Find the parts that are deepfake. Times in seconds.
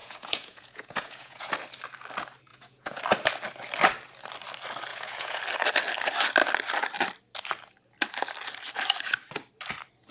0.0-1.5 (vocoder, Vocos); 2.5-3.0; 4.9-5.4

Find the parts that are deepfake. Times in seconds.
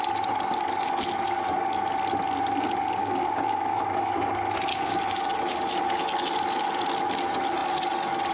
3.0-4.1 (codec, DAC); 4.7-5.7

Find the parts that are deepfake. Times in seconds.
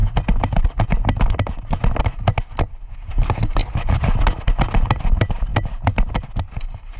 3.6-4.2 (vocoder, BigVGAN v2)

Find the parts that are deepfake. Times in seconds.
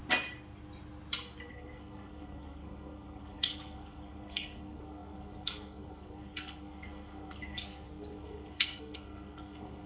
1.5-9.9 (codec, SNAC)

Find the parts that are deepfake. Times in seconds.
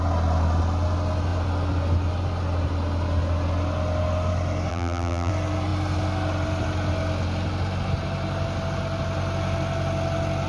4.7-5.3 (vocoder, BigVGAN v2)